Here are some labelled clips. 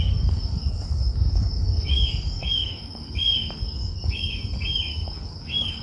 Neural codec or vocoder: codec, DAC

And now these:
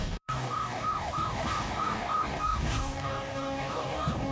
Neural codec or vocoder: codec, DAC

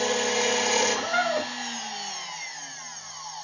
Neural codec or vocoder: none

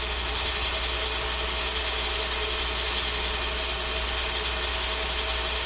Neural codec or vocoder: none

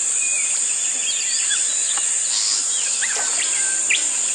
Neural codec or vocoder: none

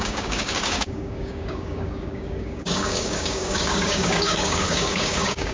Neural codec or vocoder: codec, DAC